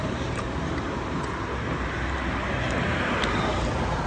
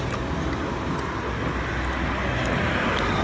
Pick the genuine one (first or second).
second